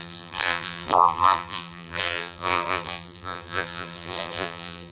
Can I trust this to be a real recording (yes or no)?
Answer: no